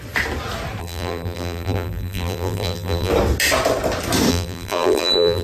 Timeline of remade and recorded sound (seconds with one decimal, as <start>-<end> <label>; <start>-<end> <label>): 0.0-0.8 recorded; 0.8-3.1 remade; 3.1-4.3 recorded; 4.3-5.4 remade

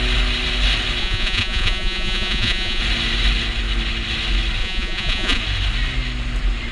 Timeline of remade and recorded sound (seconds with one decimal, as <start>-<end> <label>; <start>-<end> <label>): 0.0-1.0 recorded; 1.0-2.8 remade; 2.8-4.6 recorded; 4.6-5.4 remade; 5.4-6.7 recorded